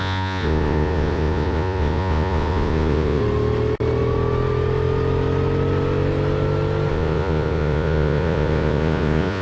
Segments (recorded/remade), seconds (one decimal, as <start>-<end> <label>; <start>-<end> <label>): 0.0-3.2 remade; 3.2-6.9 recorded; 6.9-9.4 remade